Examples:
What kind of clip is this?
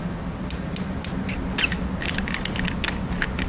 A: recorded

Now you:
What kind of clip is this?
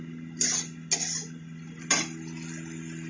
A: recorded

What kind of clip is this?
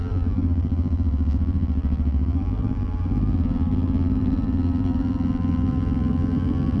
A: remade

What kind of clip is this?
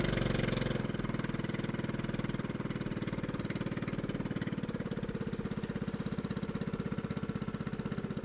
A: recorded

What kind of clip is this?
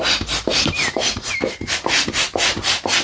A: recorded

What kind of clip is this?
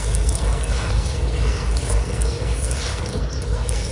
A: remade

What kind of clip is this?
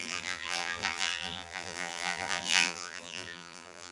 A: remade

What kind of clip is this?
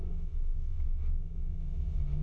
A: remade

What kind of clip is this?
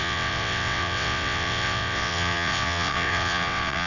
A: remade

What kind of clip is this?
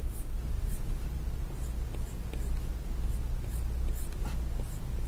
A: recorded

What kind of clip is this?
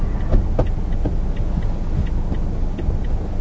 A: recorded